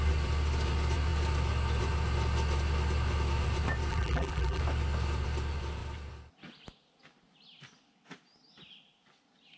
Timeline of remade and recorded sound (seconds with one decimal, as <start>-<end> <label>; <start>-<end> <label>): 0.0-3.9 recorded; 3.9-4.6 remade; 4.6-9.6 recorded